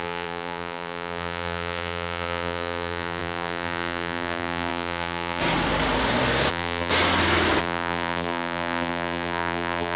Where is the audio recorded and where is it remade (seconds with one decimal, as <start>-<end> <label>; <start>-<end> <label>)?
0.0-5.4 remade; 5.4-6.5 recorded; 6.5-6.9 remade; 6.9-7.6 recorded; 7.6-10.0 remade